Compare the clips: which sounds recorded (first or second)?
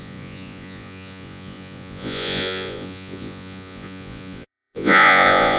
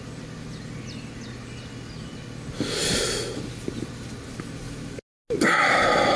second